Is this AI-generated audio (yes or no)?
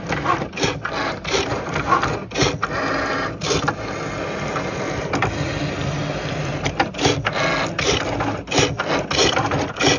no